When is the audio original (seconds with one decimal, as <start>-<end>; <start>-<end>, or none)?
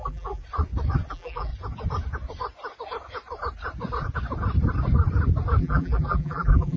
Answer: 0.4-1.1; 1.5-5.6